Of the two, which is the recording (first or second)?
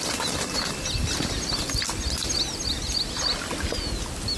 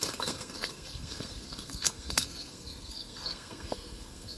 first